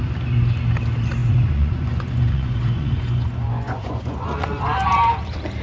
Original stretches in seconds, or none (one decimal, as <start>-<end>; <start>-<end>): 0.0-1.2; 4.6-5.6